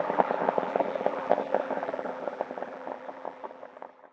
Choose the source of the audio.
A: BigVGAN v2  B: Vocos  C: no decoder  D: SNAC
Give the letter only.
A